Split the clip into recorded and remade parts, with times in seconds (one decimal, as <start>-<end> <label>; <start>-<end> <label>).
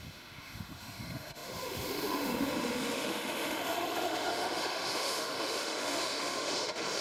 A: 0.0-7.0 remade